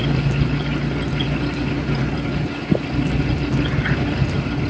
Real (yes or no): yes